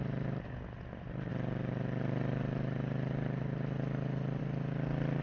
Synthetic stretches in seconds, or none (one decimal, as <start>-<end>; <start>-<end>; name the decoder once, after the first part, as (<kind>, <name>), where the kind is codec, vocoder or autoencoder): none